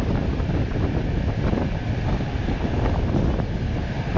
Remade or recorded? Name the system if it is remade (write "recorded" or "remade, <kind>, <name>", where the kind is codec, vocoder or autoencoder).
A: recorded